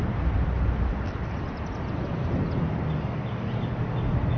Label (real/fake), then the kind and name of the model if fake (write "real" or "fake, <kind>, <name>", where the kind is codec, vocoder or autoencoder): real